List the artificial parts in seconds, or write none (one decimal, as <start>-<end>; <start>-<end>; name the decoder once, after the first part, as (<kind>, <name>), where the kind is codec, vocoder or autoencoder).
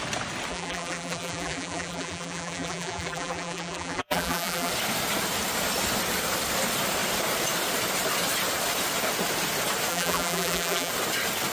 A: 0.5-4.7 (vocoder, BigVGAN v2); 9.9-10.9